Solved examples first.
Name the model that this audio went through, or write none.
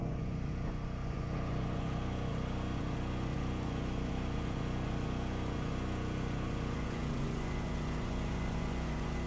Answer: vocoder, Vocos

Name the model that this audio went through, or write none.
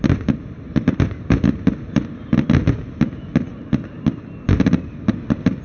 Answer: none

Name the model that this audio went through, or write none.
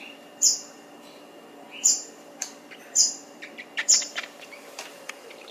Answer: vocoder, BigVGAN v2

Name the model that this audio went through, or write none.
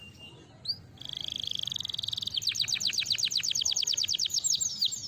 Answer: none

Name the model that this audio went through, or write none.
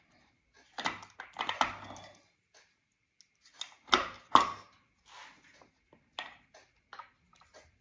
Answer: none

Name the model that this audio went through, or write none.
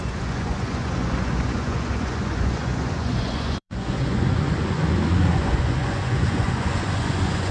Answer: vocoder, Vocos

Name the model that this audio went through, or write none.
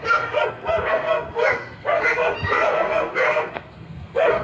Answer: codec, SNAC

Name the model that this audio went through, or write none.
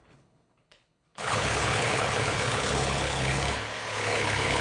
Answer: codec, HILCodec